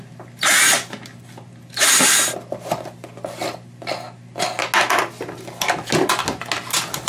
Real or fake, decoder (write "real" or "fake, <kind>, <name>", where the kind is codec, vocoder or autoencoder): real